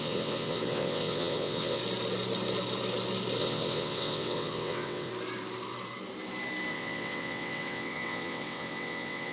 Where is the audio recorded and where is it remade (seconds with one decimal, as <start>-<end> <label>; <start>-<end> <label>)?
0.0-1.8 remade; 1.8-3.4 recorded; 3.4-5.1 remade; 5.1-6.7 recorded; 6.7-9.3 remade